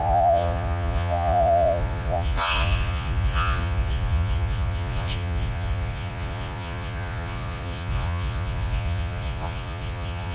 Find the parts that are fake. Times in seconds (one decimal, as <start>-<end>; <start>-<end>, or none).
0.0-10.3